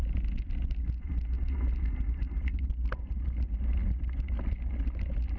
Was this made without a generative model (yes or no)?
yes